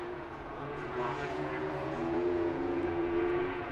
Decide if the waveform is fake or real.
fake